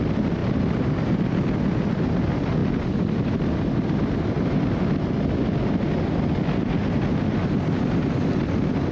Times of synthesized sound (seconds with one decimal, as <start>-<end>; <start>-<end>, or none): 0.4-1.2

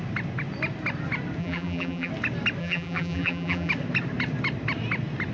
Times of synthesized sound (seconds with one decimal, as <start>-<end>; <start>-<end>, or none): 1.4-2.1; 2.6-3.7

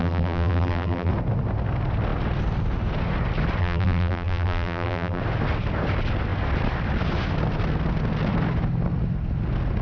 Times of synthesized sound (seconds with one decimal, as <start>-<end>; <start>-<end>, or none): 0.0-1.1; 3.6-5.2

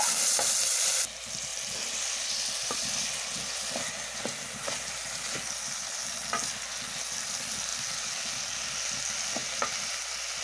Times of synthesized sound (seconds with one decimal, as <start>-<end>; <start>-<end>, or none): 1.5-3.9

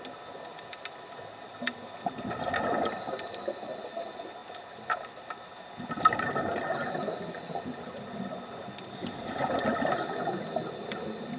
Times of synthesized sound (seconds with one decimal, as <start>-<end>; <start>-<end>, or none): 4.4-5.2